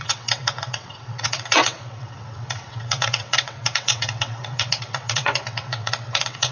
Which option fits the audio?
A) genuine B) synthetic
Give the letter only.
B